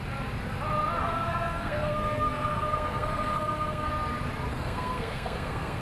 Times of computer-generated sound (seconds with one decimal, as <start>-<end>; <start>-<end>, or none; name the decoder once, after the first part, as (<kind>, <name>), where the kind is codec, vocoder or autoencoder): 1.0-3.9 (codec, SNAC); 4.5-5.8